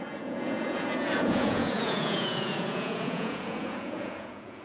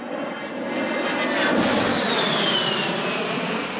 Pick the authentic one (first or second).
second